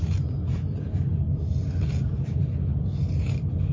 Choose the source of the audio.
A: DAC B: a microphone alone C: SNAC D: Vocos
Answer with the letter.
B